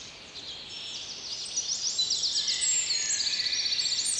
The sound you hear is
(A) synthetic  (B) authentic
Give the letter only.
B